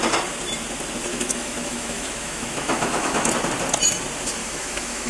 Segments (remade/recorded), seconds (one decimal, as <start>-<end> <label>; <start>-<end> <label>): 0.0-1.1 recorded; 1.1-3.3 remade; 3.3-4.4 recorded; 4.4-5.1 remade